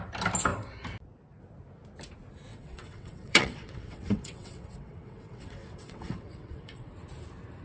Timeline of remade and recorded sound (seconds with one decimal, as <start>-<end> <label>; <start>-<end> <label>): 0.0-2.5 recorded; 2.5-6.9 remade; 6.9-7.6 recorded